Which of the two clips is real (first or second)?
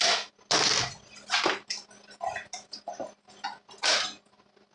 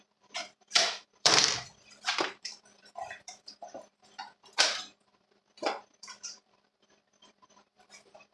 first